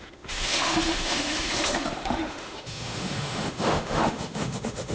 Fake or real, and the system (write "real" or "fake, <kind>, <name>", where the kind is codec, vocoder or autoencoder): fake, autoencoder, DAC-VAE